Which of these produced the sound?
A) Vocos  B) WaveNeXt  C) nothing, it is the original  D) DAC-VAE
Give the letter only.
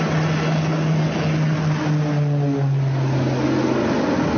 C